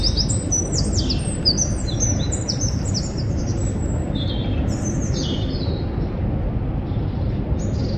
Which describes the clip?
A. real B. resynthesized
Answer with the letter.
A